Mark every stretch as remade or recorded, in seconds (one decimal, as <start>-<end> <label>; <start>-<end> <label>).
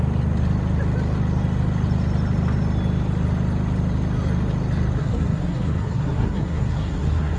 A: 0.0-5.0 recorded; 5.0-7.4 remade